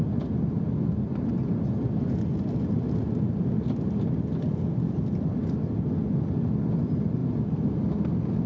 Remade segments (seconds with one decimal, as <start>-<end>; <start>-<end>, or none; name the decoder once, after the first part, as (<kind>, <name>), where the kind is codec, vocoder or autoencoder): none